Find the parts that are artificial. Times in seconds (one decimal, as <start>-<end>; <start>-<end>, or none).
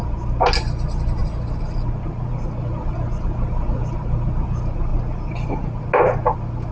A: none